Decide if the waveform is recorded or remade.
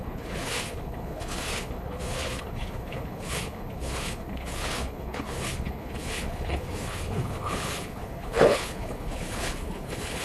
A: remade